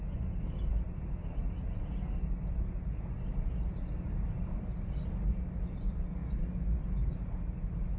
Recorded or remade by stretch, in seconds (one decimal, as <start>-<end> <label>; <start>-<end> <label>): 0.0-8.0 recorded